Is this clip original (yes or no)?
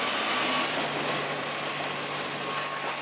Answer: yes